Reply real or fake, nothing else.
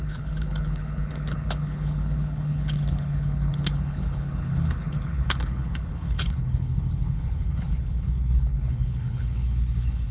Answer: fake